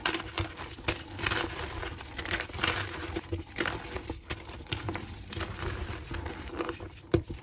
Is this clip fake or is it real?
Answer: fake